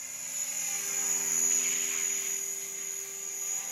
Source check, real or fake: real